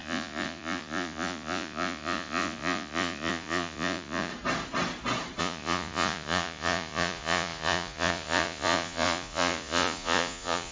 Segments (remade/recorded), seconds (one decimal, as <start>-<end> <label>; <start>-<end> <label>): 0.0-4.3 remade; 4.3-5.4 recorded; 5.4-10.7 remade